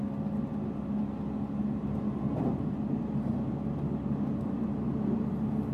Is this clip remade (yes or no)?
no